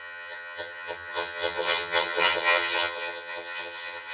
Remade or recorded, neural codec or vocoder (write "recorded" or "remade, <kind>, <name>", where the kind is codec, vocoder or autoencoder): remade, vocoder, HiFi-GAN